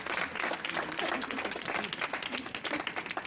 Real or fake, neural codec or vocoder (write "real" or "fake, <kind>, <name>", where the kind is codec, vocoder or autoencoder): real